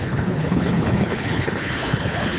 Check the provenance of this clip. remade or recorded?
remade